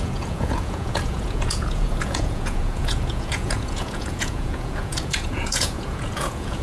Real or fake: fake